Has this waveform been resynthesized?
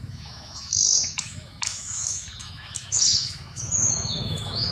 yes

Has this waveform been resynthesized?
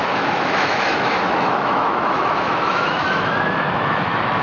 yes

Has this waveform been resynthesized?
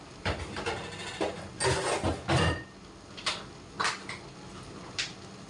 no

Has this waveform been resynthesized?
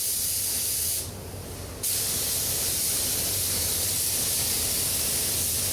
no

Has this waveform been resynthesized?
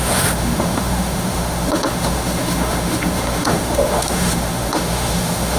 yes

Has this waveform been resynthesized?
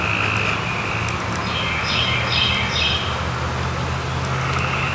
no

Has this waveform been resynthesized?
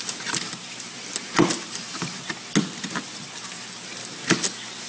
no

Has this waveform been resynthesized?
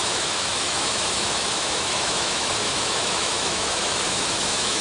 yes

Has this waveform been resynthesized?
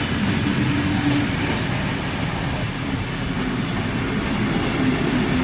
no